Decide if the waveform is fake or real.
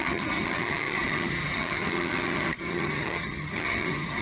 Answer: fake